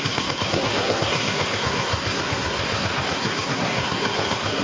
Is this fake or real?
fake